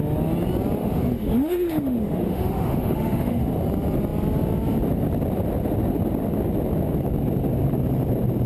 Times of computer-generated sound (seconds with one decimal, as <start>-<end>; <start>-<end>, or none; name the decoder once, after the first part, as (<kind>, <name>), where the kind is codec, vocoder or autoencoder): 0.8-3.5 (autoencoder, DAC-VAE)